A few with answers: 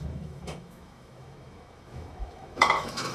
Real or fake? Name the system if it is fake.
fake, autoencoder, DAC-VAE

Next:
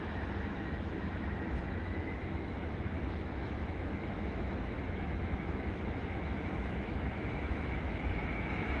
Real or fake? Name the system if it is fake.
fake, autoencoder, DAC-VAE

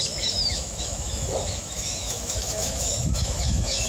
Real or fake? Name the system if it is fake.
fake, autoencoder, DAC-VAE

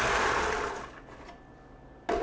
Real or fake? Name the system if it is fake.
real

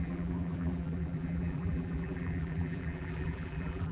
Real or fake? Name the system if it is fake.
fake, vocoder, BigVGAN v2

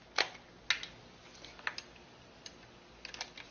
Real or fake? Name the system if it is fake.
real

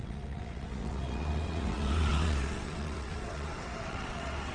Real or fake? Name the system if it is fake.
fake, vocoder, WaveNeXt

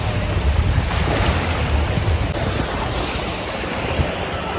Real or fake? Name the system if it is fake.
real